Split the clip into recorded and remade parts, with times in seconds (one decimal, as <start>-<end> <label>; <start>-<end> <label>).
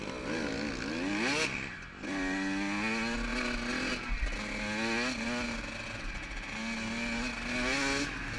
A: 0.0-8.4 recorded